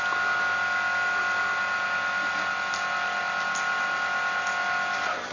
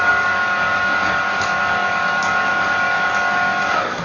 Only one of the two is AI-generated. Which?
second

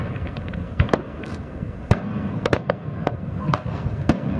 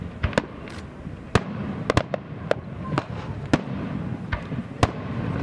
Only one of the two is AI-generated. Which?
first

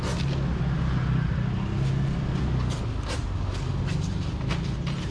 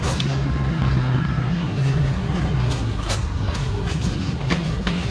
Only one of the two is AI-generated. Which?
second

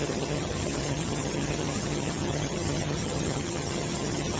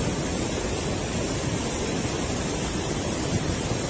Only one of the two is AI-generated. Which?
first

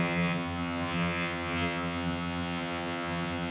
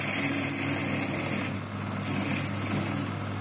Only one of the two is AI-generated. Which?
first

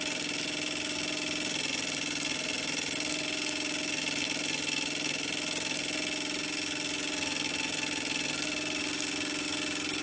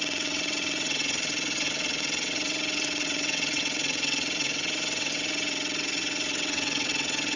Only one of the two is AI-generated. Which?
second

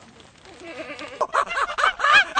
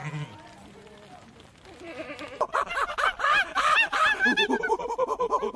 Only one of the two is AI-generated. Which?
second